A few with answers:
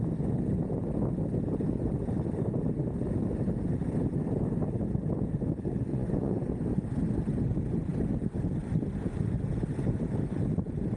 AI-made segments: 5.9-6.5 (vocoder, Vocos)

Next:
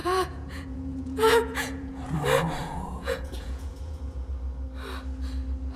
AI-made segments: 0.0-2.0 (vocoder, Vocos); 2.6-4.3